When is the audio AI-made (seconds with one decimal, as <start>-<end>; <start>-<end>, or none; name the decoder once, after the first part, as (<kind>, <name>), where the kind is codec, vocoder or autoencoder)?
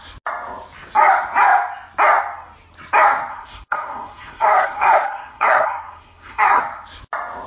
3.3-6.6 (codec, SNAC)